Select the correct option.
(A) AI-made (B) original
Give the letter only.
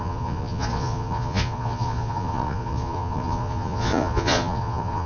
A